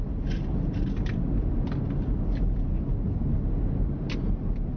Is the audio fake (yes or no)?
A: no